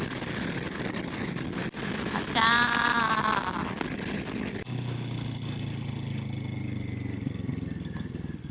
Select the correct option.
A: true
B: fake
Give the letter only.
A